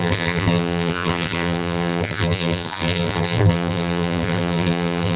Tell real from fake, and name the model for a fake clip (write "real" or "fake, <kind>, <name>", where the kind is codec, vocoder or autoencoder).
fake, vocoder, BigVGAN v2